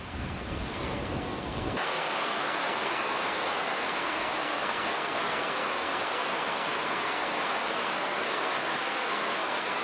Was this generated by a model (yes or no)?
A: yes